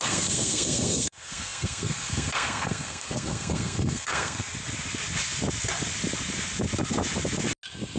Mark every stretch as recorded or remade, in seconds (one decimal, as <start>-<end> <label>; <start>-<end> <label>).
0.0-4.4 remade; 4.4-8.0 recorded